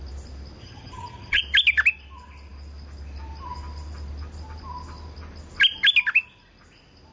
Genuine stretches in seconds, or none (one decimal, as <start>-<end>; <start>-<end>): 0.0-0.6; 1.4-7.1